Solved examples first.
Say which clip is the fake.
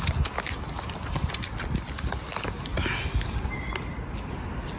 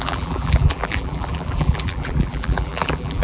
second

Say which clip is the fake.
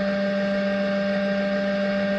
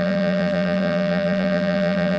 second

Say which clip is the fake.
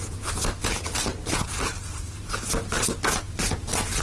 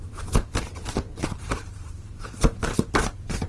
second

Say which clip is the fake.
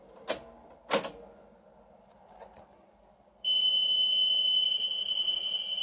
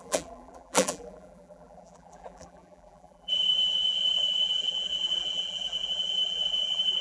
second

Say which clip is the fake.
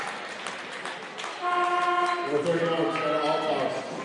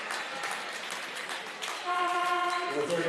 second